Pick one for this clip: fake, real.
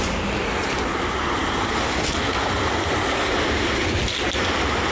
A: real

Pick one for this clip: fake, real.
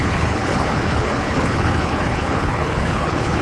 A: fake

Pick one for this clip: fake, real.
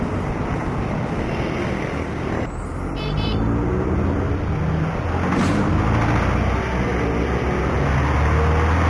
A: real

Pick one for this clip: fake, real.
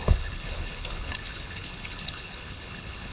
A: fake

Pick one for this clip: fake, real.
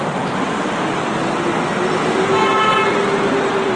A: real